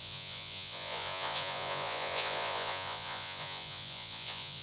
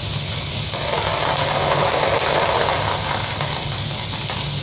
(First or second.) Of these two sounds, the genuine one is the second